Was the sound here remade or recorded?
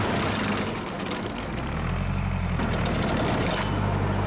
recorded